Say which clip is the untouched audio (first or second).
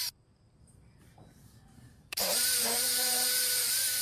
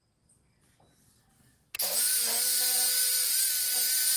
second